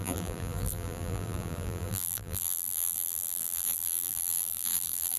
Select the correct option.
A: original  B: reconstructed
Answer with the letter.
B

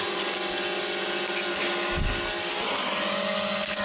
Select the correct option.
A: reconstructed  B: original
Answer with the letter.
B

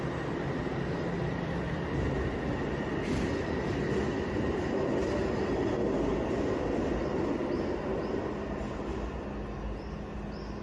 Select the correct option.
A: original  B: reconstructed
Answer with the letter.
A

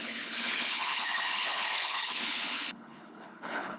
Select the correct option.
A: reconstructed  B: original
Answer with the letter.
A